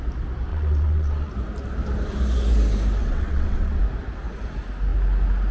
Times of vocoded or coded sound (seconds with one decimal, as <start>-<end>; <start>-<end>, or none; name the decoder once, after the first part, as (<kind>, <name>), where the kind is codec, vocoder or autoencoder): 0.5-1.3 (vocoder, WaveNeXt); 3.0-3.8